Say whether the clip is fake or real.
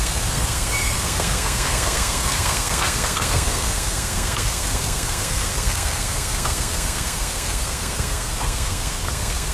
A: fake